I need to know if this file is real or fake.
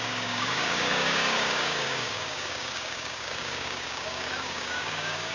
fake